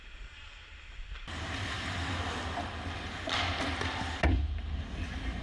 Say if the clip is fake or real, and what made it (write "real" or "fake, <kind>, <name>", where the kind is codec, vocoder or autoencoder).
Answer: real